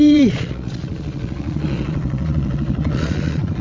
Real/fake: fake